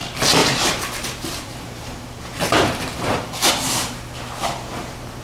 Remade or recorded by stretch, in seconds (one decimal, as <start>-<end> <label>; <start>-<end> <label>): 0.0-0.4 recorded; 0.4-3.5 remade; 3.5-5.2 recorded